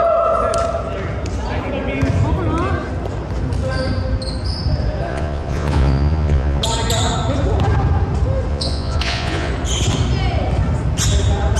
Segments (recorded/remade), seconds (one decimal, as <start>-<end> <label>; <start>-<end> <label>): 0.0-5.1 recorded; 5.1-6.6 remade; 6.6-8.5 recorded; 8.5-9.5 remade; 9.5-11.6 recorded